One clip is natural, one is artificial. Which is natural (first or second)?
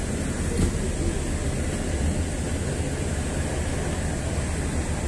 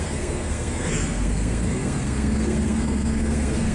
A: first